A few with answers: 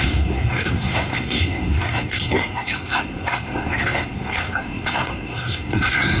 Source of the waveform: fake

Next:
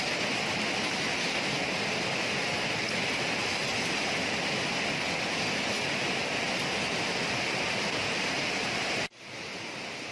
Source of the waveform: real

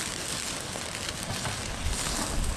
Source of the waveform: real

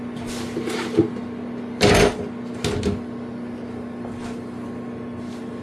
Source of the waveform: real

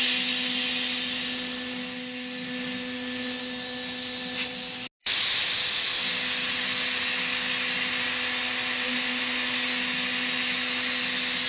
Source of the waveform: real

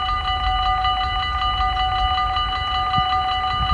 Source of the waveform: real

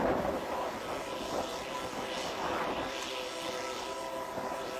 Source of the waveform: real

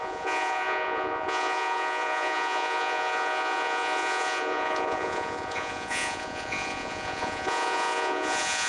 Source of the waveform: fake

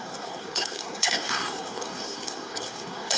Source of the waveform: fake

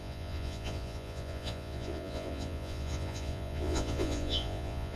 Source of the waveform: fake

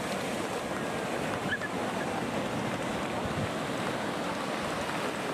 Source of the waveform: real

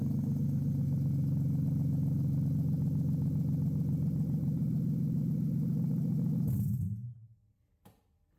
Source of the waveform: real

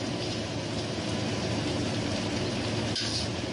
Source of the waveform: real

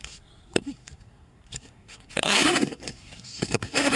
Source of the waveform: fake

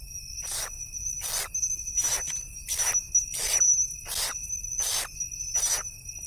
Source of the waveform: real